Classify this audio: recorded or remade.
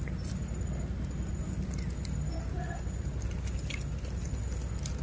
recorded